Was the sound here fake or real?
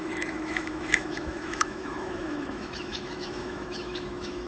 fake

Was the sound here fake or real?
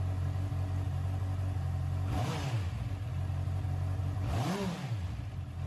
real